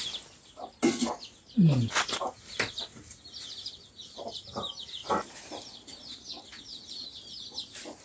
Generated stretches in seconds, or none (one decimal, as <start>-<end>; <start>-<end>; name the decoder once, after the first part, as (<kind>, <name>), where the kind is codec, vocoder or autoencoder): 5.0-5.6 (vocoder, BigVGAN v2)